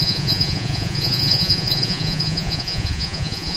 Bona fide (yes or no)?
no